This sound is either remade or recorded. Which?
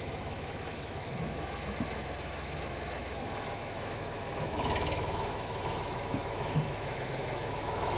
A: remade